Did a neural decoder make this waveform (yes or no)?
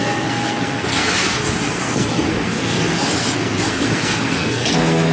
yes